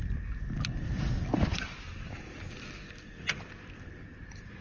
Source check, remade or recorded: recorded